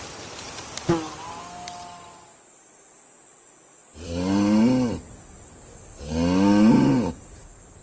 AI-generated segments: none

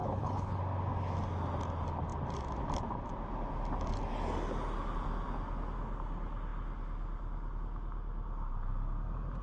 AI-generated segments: 0.0-0.6 (codec, HILCodec)

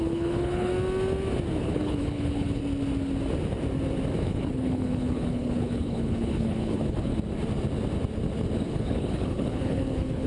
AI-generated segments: 0.0-0.7 (codec, HILCodec); 1.6-2.6; 4.2-7.1; 8.7-10.3